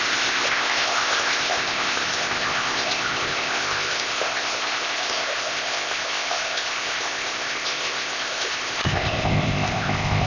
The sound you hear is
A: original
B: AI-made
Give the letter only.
B